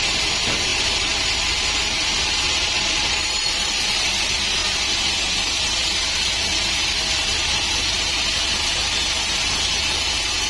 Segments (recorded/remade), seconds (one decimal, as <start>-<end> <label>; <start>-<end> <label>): 0.0-10.5 recorded